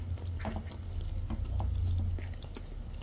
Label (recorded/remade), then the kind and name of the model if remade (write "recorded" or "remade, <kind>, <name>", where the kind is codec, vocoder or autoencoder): recorded